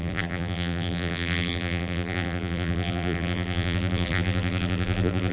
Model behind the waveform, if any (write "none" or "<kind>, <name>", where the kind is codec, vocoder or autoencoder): vocoder, BigVGAN v2